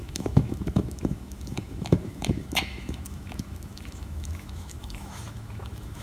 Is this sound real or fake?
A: fake